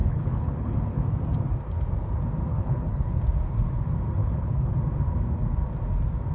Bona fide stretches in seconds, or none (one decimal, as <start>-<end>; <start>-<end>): 1.0-2.5; 3.2-4.2; 4.7-6.3